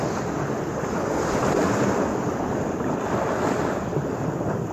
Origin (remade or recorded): recorded